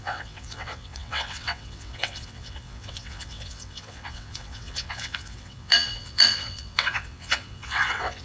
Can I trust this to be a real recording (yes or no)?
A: no